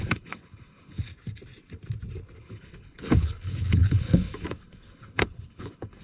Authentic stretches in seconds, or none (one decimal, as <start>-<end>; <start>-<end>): 1.1-2.4